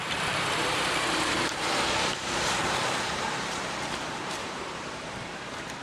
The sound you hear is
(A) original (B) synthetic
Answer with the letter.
B